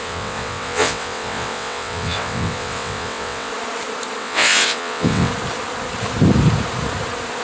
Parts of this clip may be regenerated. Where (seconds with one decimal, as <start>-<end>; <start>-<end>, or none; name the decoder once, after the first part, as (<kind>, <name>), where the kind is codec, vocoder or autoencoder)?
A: 0.0-3.5 (vocoder, WaveNeXt); 4.2-5.3